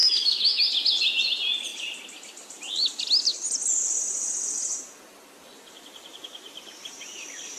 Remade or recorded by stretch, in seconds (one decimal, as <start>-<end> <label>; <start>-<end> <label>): 0.0-0.6 remade; 0.6-7.6 recorded